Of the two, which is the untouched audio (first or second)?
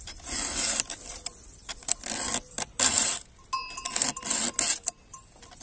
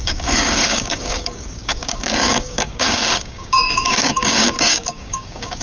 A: first